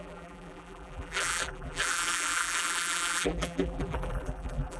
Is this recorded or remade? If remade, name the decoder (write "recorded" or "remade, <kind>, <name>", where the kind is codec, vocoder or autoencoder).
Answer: remade, vocoder, BigVGAN v2